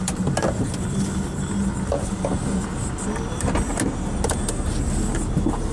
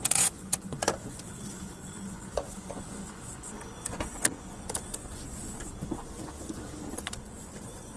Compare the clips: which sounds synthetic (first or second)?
second